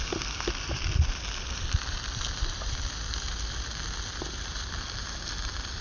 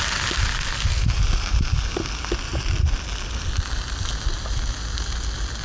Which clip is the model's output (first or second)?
first